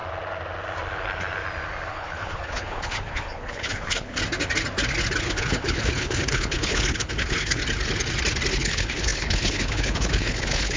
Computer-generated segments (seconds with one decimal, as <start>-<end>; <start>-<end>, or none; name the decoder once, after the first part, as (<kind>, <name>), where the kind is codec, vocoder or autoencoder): 1.9-4.2 (codec, HILCodec); 5.2-7.6; 8.5-10.8